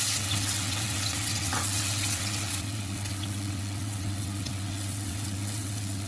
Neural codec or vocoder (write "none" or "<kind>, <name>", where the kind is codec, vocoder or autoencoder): vocoder, WaveNeXt